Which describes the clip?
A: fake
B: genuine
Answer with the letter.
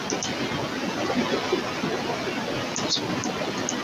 B